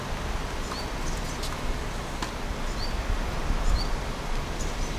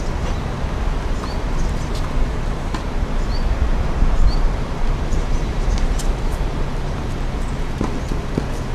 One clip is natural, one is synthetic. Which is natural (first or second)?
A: first